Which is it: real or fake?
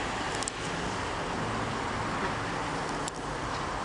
real